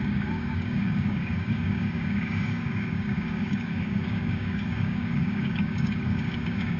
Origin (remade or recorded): remade